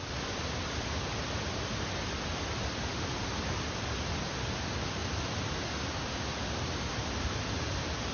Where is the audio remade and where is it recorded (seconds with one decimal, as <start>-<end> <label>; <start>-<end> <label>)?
0.0-8.1 recorded